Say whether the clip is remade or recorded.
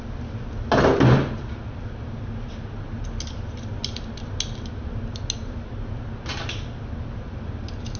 recorded